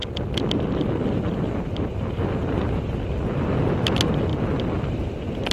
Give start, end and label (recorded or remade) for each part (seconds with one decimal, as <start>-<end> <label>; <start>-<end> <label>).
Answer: 0.0-5.5 recorded